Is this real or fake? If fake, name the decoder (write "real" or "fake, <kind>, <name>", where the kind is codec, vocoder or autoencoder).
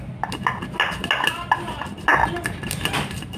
real